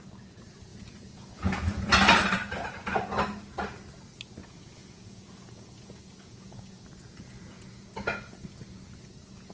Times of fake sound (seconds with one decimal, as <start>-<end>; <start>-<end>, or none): 0.7-1.9; 4.4-9.5